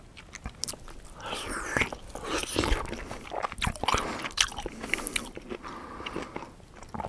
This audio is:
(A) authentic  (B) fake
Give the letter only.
A